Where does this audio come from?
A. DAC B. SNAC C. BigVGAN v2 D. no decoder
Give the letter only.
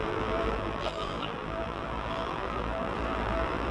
C